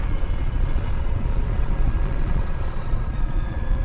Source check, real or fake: fake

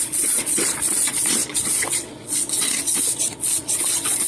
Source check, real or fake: fake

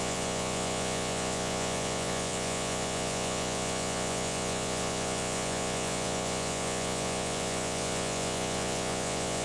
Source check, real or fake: fake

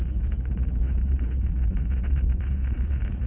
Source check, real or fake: fake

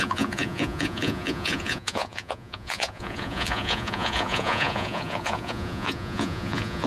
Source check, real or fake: fake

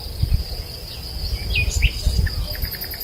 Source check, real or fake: real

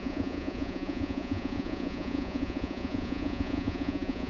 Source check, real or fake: fake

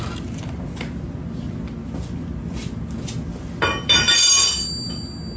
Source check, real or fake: real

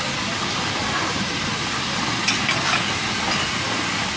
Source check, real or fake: real